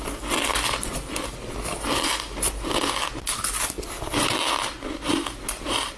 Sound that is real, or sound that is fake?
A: real